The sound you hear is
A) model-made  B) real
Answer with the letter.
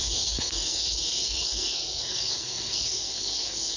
A